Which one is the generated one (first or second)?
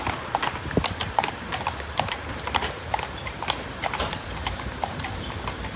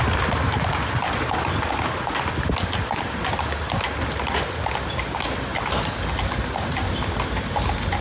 first